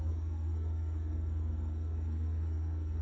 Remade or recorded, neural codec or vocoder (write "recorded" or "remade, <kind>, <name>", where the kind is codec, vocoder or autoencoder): remade, codec, SNAC